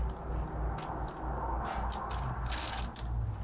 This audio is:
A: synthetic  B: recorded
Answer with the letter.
B